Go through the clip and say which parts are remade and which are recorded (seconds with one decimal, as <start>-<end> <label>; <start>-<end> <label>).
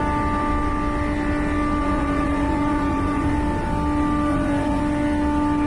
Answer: 0.0-1.8 recorded; 1.8-3.3 remade; 3.3-4.3 recorded; 4.3-4.8 remade; 4.8-5.7 recorded